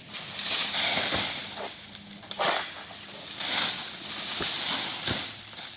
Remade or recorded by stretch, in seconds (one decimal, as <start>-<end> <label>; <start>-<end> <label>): 0.0-5.8 recorded